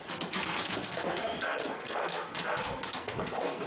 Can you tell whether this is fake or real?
fake